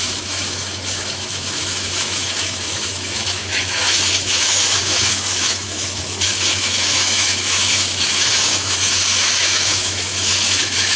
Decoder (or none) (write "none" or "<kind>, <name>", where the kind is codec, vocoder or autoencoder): autoencoder, DAC-VAE